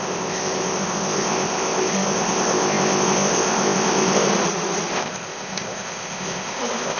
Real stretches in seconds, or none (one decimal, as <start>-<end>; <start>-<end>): 4.3-4.9